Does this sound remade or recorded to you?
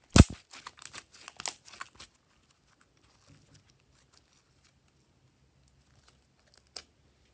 recorded